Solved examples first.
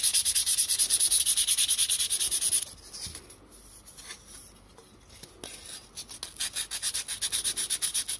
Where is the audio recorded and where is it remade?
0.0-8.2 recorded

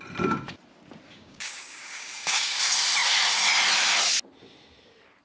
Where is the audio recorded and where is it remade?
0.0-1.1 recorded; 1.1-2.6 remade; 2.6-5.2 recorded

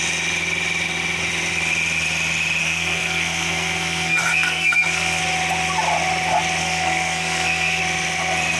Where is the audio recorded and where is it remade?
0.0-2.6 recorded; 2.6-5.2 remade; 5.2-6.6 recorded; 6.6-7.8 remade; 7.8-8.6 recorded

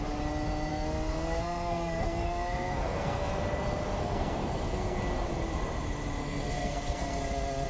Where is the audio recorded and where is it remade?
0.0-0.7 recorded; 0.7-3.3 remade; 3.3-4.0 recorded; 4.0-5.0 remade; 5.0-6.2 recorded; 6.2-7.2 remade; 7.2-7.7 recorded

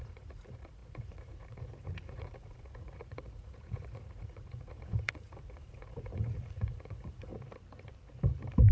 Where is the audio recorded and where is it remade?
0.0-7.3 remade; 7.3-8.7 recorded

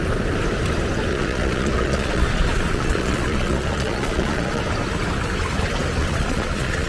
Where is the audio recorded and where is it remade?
0.0-1.1 recorded; 1.1-4.6 remade; 4.6-6.0 recorded; 6.0-6.9 remade